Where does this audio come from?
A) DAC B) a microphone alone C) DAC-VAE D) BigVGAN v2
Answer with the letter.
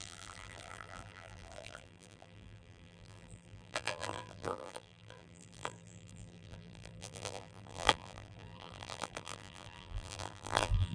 D